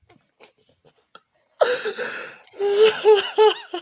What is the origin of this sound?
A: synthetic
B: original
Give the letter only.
B